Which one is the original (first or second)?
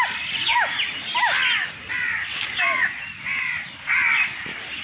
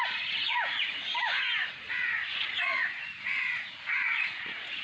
first